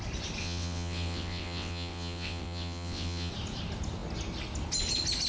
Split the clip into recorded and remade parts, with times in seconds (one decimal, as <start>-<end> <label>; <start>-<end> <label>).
0.0-0.4 recorded; 0.4-3.3 remade; 3.3-5.3 recorded